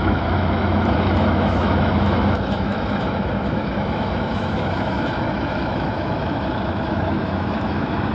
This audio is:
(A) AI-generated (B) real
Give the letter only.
A